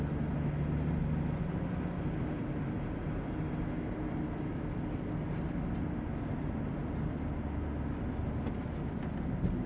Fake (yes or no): no